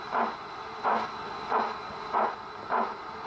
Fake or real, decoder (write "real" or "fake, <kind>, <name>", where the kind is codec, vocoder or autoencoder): real